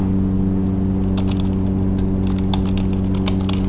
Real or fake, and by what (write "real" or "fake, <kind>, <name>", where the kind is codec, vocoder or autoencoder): real